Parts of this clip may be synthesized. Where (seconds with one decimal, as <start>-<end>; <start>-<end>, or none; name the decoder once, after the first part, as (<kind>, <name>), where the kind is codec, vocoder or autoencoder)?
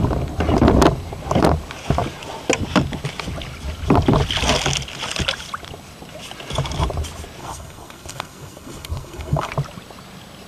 7.4-9.5 (codec, SNAC)